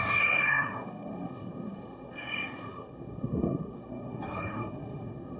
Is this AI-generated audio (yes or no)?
yes